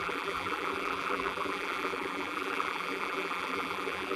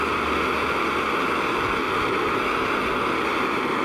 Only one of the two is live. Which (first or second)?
second